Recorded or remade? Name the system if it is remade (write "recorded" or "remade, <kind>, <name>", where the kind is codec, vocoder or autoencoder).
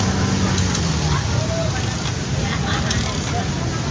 recorded